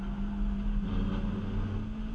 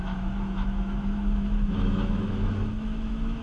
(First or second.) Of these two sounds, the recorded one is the first